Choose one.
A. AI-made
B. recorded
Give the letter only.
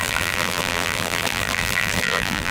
A